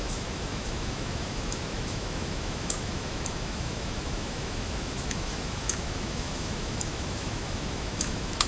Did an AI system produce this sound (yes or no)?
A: yes